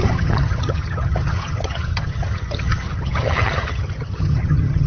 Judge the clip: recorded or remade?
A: remade